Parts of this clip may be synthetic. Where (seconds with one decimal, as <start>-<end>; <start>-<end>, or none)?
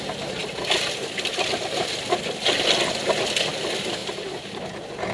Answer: 4.0-4.6